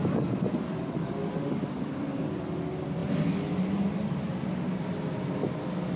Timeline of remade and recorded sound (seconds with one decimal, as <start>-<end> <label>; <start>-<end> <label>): 0.0-6.0 recorded